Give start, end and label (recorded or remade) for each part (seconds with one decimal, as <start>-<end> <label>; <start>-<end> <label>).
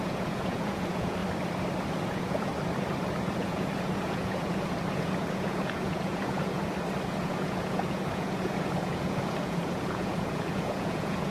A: 0.0-1.2 remade; 1.2-2.1 recorded; 2.1-2.5 remade; 2.5-3.4 recorded; 3.4-6.6 remade; 6.6-7.2 recorded; 7.2-11.3 remade